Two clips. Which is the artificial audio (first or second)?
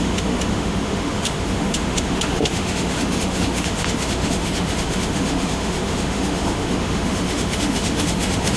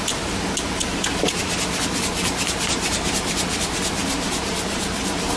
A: first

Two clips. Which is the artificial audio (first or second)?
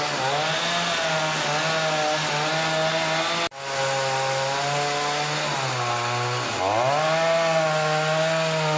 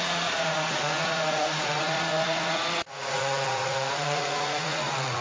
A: second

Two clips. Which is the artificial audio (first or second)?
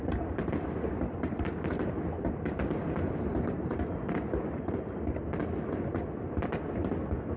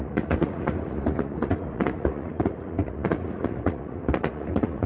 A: second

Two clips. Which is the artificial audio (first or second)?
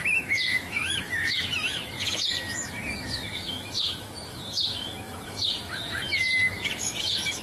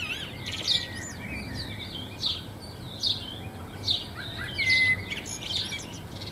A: first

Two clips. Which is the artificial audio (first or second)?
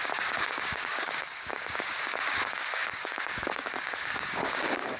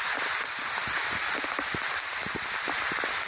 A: first